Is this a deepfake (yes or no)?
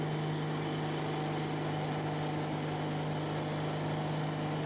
no